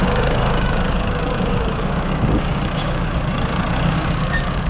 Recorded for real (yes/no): no